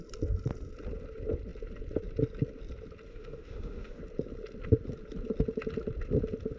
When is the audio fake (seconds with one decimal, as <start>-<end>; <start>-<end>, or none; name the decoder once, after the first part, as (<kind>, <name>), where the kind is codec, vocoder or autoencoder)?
3.1-4.0 (autoencoder, DAC-VAE)